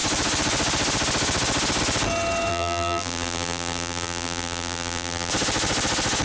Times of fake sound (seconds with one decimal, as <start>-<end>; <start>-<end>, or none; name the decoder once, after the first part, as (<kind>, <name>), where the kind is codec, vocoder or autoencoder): 2.5-5.3 (vocoder, BigVGAN v2)